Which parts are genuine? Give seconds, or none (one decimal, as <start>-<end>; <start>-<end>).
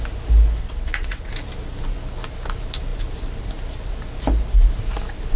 0.0-0.6; 1.3-5.4